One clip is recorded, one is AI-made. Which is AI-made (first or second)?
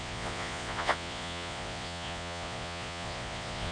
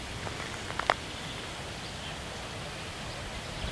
first